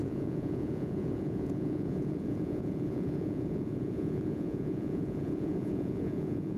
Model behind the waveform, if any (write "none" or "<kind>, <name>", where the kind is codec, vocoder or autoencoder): vocoder, Vocos